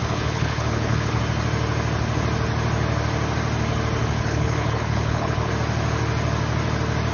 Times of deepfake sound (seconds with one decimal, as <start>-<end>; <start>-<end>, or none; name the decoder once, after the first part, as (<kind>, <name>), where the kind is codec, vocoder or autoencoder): 0.0-1.2 (codec, HILCodec); 4.0-5.5